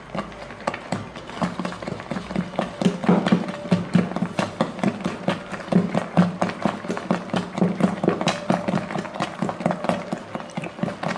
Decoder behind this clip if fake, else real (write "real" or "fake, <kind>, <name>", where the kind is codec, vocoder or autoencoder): real